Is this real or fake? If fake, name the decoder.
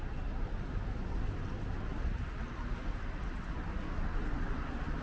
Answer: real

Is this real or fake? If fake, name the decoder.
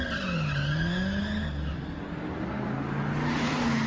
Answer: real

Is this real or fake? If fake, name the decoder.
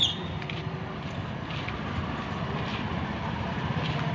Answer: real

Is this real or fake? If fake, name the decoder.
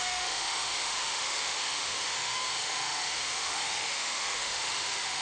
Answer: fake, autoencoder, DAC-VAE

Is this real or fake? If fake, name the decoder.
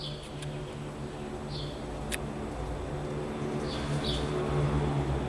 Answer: real